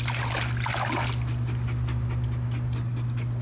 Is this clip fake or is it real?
real